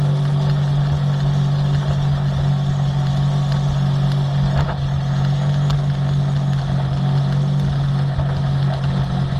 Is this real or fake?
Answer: real